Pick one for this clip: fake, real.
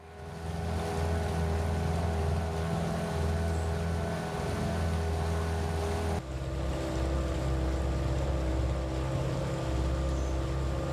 real